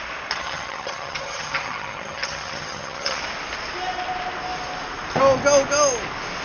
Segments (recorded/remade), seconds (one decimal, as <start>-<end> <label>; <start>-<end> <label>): 0.0-0.4 recorded; 0.4-3.2 remade; 3.2-6.4 recorded